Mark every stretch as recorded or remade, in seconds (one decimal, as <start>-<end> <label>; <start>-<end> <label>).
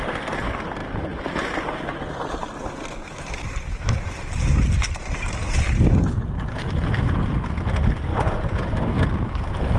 0.0-8.1 recorded; 8.1-8.6 remade; 8.6-9.8 recorded